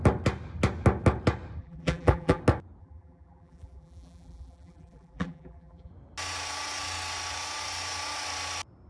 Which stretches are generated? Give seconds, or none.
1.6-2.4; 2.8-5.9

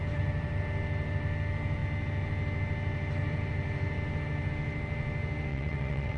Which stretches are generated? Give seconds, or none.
5.5-6.2

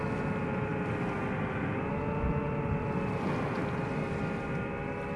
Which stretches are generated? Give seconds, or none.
none

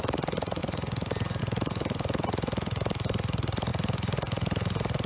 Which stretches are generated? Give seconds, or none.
none

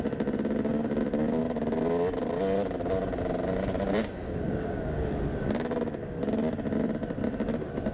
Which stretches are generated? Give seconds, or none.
4.2-5.1

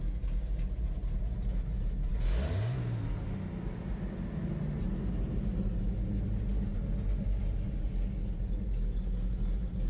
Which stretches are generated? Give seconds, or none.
none

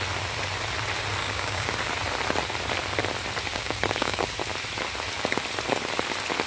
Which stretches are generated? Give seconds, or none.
1.2-1.7; 3.5-4.3

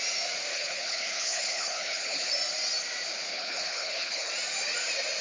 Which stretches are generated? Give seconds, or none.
0.5-2.3; 3.3-4.3